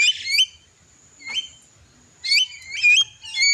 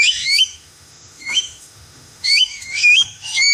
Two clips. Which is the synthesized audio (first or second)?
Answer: second